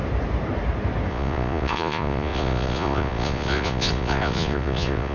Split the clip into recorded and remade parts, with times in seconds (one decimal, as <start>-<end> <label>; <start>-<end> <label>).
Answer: 0.0-1.1 recorded; 1.1-5.1 remade